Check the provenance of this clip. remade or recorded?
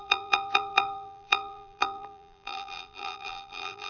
remade